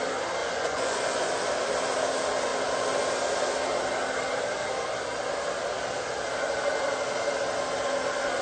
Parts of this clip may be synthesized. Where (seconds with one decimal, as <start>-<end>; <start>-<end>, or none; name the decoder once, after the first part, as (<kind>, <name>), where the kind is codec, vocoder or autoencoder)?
0.4-1.3 (vocoder, Vocos)